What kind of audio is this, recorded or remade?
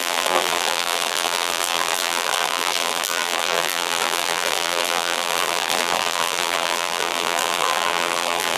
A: remade